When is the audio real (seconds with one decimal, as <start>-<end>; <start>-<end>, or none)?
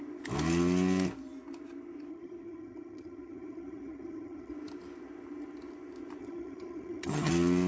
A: 0.0-2.1; 4.5-6.2; 7.3-7.7